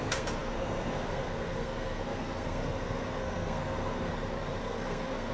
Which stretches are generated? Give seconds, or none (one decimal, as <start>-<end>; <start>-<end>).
0.0-4.1; 4.6-5.3